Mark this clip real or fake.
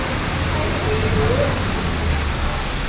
real